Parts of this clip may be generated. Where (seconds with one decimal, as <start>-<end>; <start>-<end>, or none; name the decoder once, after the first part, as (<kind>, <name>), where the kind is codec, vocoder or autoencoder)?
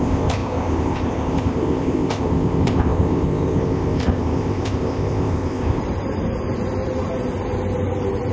0.0-5.8 (codec, ZipCodec)